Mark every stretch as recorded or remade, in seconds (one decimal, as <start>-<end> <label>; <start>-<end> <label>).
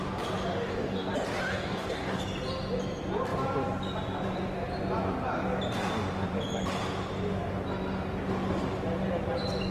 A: 0.0-0.5 recorded; 0.5-1.1 remade; 1.1-1.5 recorded; 1.5-2.2 remade; 2.2-9.7 recorded